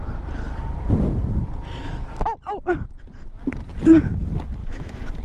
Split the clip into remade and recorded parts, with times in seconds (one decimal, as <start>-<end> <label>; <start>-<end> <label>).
0.0-4.6 recorded; 4.6-5.2 remade